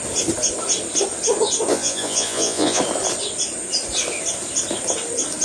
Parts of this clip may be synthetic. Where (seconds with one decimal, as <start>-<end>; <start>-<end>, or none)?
1.7-2.8